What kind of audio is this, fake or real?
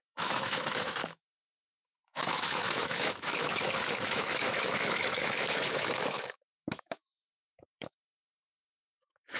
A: fake